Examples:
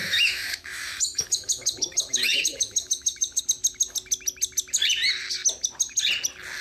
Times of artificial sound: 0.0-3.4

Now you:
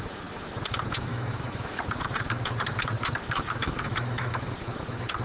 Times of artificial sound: 1.1-1.8; 3.6-4.5